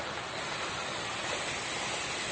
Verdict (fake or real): real